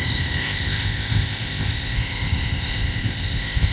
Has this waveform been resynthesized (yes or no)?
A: yes